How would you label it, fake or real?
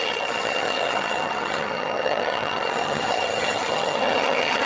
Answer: fake